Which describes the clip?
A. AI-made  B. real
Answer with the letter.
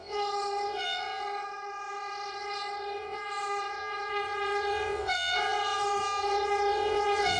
A